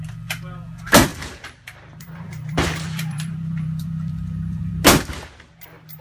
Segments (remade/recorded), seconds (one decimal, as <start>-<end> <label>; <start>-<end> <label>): 0.0-1.1 recorded; 1.1-4.7 remade; 4.7-6.0 recorded